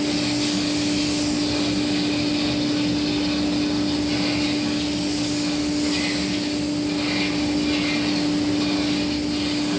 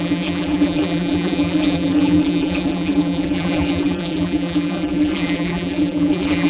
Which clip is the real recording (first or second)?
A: first